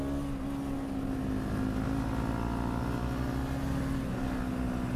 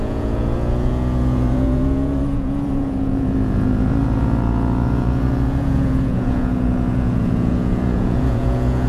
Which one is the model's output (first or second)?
second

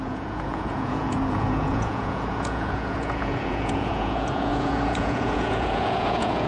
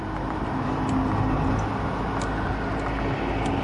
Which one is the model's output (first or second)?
first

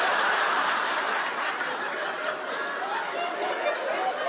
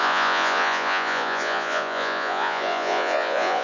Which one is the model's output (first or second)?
second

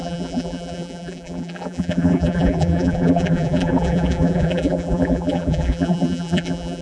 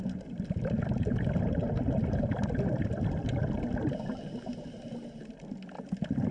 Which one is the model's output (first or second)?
first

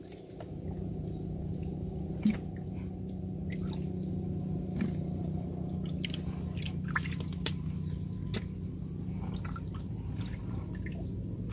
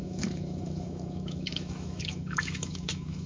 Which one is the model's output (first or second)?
second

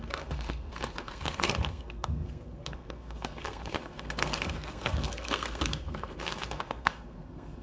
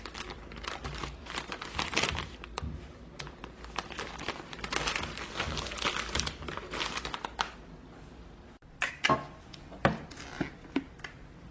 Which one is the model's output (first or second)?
first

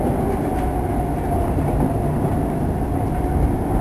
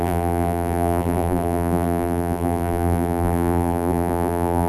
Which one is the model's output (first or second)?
second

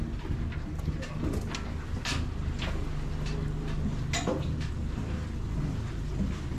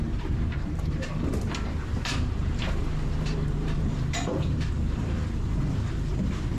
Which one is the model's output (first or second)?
second